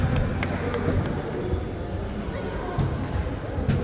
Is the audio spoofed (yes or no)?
no